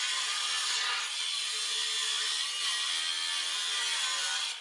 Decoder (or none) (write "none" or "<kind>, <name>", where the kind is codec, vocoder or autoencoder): none